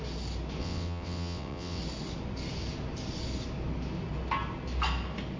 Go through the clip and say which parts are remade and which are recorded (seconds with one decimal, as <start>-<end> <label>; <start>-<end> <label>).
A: 0.0-0.6 recorded; 0.6-1.8 remade; 1.8-5.4 recorded